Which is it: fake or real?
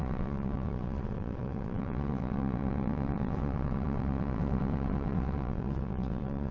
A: fake